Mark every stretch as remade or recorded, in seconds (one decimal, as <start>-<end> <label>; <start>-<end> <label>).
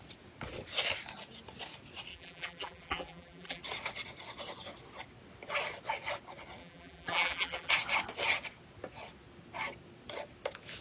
0.0-2.1 recorded; 2.1-3.6 remade; 3.6-6.6 recorded; 6.6-7.7 remade; 7.7-10.8 recorded